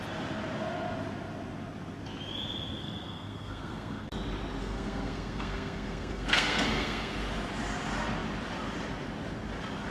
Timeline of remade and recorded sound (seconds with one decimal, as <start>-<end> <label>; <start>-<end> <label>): 0.0-2.8 recorded; 2.8-4.1 remade; 4.1-4.6 recorded; 4.6-7.2 remade; 7.2-9.9 recorded